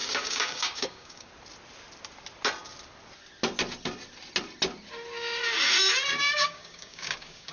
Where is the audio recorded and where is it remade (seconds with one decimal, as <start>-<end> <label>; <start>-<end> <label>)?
0.0-1.3 remade; 1.3-6.2 recorded; 6.2-7.5 remade

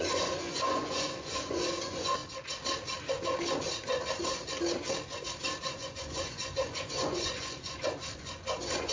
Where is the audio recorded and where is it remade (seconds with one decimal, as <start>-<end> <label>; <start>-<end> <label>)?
0.0-2.2 remade; 2.2-5.6 recorded; 5.6-8.9 remade

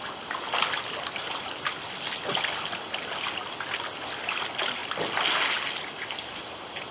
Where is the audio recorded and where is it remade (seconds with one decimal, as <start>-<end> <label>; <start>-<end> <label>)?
0.0-6.9 recorded

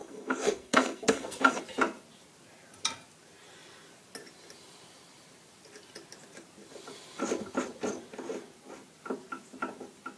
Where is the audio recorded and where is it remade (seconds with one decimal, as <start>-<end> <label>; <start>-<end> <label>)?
0.0-1.6 remade; 1.6-10.2 recorded

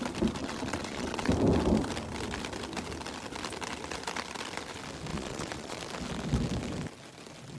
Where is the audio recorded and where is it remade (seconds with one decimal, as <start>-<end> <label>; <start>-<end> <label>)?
0.0-0.4 recorded; 0.4-1.3 remade; 1.3-5.1 recorded; 5.1-5.8 remade; 5.8-7.6 recorded

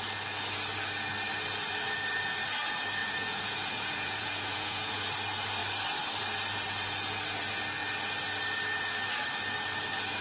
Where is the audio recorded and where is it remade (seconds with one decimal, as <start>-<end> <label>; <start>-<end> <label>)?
0.0-3.0 recorded; 3.0-4.9 remade; 4.9-10.2 recorded

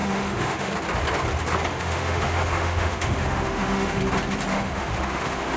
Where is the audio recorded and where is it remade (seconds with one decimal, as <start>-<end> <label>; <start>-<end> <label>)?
0.0-0.7 remade; 0.7-1.7 recorded; 1.7-4.0 remade; 4.0-4.5 recorded; 4.5-5.6 remade